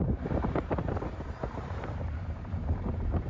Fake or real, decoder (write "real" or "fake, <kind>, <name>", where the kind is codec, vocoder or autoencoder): fake, vocoder, BigVGAN v2